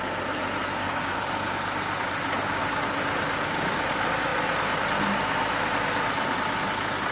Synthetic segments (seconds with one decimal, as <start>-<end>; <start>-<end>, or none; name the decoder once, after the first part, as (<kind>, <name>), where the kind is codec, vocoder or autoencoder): 0.8-1.5 (codec, DAC)